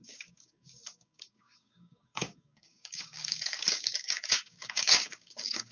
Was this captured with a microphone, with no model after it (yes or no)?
no